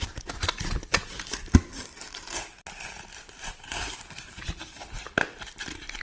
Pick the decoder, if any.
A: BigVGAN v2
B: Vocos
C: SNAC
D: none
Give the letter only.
D